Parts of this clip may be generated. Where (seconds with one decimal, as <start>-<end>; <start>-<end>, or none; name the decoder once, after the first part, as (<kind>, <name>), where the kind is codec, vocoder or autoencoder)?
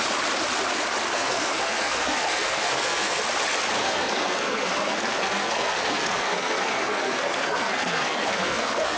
1.1-3.2 (codec, SNAC); 3.8-9.0